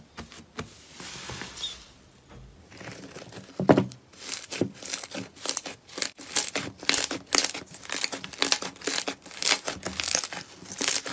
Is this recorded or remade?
recorded